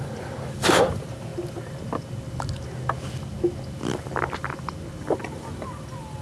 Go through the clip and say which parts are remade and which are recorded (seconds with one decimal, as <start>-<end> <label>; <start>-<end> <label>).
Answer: 0.0-1.3 remade; 1.3-5.0 recorded; 5.0-6.2 remade